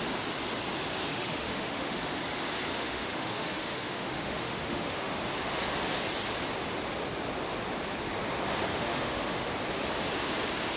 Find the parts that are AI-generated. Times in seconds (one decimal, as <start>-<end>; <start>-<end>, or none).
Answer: 1.1-2.0; 2.7-5.2; 8.7-9.5